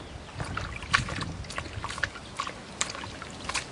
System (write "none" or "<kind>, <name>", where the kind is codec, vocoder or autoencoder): none